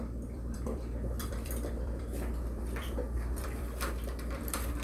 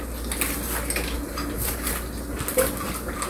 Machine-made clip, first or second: first